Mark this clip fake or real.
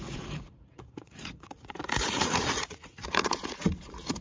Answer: fake